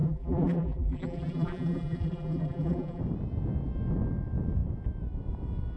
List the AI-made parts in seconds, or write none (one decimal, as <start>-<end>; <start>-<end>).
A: 0.0-3.0